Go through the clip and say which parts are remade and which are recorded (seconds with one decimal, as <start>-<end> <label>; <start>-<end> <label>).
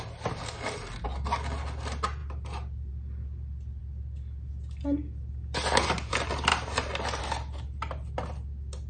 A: 0.0-8.9 recorded